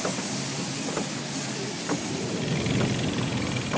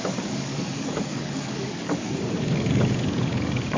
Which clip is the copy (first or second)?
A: second